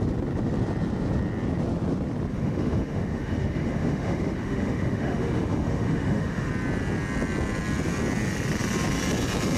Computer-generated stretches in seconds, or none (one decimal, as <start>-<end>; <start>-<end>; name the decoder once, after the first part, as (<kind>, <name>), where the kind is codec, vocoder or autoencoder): 2.3-6.5 (autoencoder, DAC-VAE)